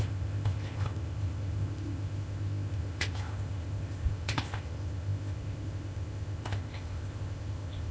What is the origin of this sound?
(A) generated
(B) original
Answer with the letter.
A